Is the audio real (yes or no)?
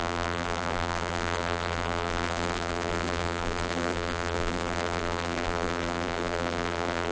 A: no